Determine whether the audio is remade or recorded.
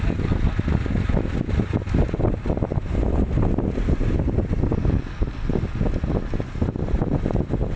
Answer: recorded